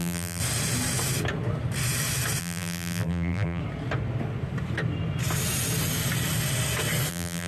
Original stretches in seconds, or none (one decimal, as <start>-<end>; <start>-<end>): 0.4-2.4; 3.6-7.1